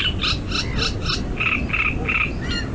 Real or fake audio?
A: real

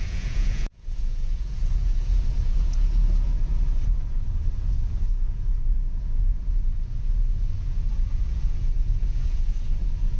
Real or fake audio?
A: fake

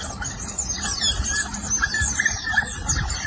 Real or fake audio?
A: real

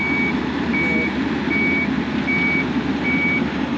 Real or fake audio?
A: real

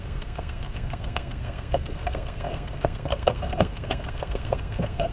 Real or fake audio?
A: fake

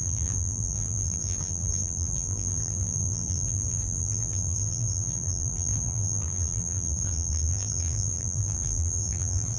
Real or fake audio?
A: fake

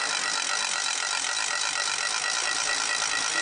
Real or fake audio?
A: real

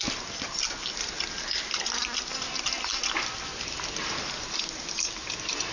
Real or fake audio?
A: real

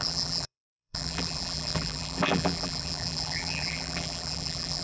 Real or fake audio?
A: fake